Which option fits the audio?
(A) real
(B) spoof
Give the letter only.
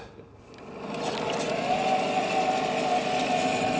A